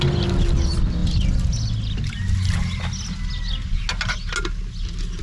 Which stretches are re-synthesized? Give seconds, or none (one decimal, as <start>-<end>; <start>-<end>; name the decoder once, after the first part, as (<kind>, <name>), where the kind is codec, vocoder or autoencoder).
none